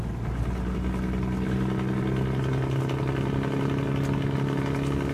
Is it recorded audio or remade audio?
recorded